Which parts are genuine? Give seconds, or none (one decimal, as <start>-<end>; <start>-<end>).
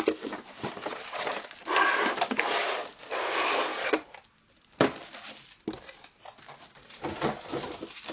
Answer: 0.0-8.1